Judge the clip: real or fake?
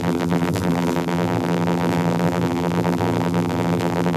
fake